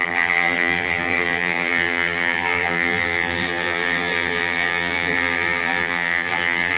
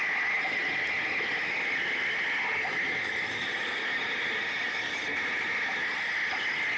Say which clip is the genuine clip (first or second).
second